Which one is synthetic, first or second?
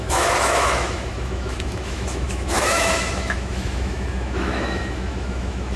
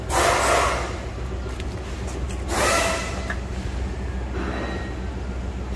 first